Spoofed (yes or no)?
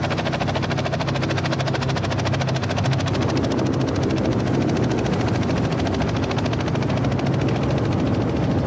no